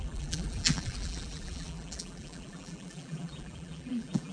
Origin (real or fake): fake